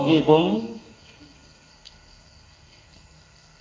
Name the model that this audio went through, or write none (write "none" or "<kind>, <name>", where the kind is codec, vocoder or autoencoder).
codec, SNAC